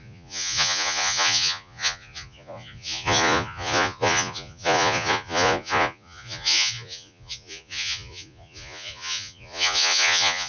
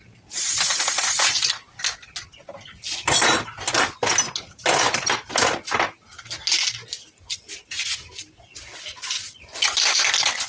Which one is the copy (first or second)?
first